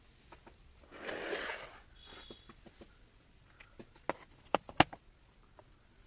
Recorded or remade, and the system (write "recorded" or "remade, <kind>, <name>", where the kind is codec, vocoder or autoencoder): recorded